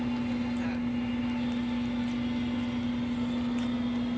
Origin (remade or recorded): recorded